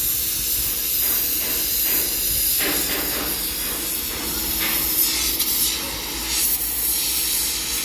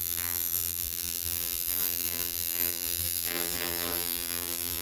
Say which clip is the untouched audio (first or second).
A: first